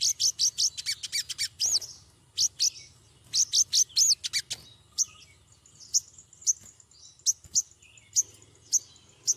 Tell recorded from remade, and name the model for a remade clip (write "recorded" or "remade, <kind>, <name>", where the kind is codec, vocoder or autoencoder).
recorded